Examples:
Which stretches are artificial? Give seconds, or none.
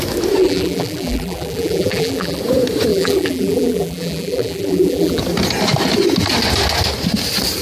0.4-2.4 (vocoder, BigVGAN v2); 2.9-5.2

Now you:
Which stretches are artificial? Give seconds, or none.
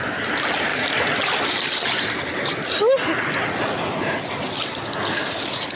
none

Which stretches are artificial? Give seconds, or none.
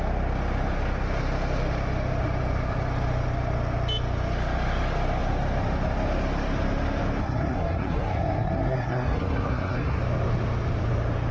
7.2-10.0 (codec, SNAC)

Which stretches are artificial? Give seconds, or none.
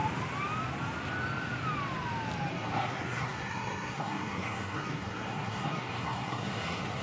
2.5-7.0 (codec, SNAC)